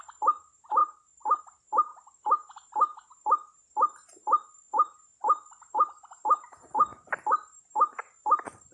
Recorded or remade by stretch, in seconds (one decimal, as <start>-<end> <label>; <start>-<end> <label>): 0.0-8.7 recorded